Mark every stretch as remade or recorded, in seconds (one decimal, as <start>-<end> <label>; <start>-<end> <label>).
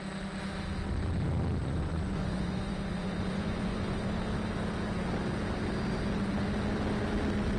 0.0-1.6 recorded; 1.6-4.2 remade; 4.2-7.6 recorded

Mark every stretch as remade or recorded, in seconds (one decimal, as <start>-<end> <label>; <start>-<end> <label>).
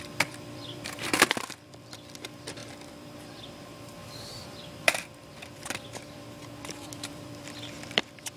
0.0-8.4 remade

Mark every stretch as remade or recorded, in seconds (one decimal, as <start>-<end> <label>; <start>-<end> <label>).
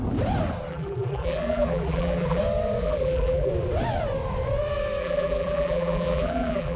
0.0-0.7 recorded; 0.7-2.4 remade; 2.4-2.8 recorded; 2.8-3.5 remade; 3.5-5.0 recorded; 5.0-6.8 remade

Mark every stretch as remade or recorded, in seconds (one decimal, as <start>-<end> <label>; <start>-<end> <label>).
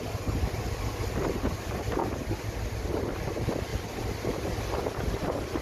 0.0-5.6 recorded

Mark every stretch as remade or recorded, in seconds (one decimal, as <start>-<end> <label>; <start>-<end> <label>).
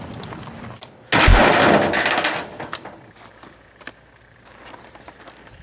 0.0-5.6 recorded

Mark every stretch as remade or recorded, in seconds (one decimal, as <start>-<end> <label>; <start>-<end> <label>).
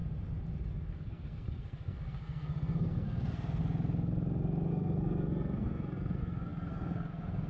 0.0-0.7 recorded; 0.7-3.6 remade; 3.6-4.7 recorded; 4.7-7.5 remade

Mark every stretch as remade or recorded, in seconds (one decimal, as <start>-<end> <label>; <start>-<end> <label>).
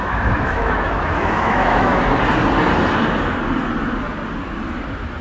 0.0-1.9 remade; 1.9-5.2 recorded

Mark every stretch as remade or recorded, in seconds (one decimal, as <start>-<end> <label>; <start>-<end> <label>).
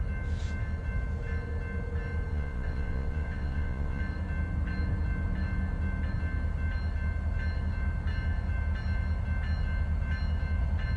0.0-2.3 recorded; 2.3-4.0 remade; 4.0-11.0 recorded